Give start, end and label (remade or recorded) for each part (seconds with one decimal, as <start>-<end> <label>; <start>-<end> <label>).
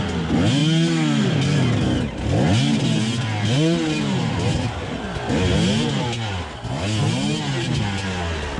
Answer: 0.0-8.6 recorded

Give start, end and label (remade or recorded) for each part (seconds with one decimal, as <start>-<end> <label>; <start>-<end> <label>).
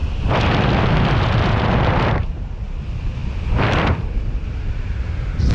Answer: 0.0-5.5 remade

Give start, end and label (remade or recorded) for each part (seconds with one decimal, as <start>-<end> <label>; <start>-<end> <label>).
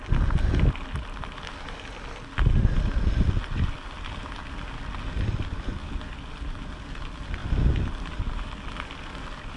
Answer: 0.0-9.6 recorded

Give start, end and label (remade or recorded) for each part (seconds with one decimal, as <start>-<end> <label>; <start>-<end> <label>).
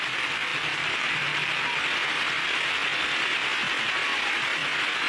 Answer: 0.0-0.5 recorded; 0.5-1.7 remade; 1.7-5.1 recorded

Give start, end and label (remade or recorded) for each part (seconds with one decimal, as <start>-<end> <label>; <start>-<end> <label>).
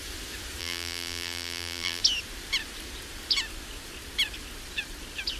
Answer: 0.0-0.6 recorded; 0.6-2.0 remade; 2.0-5.4 recorded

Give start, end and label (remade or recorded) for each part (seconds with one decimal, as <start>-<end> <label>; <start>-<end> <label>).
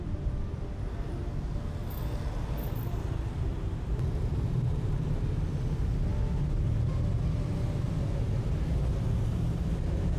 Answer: 0.0-3.5 recorded; 3.5-5.2 remade; 5.2-10.2 recorded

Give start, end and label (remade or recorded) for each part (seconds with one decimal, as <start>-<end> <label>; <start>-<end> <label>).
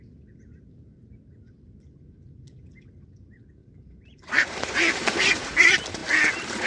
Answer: 0.0-3.6 recorded; 3.6-5.2 remade; 5.2-6.7 recorded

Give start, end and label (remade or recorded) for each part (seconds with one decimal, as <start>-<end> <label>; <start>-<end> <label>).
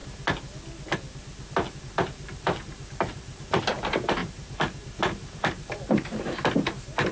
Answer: 0.0-1.8 recorded; 1.8-7.1 remade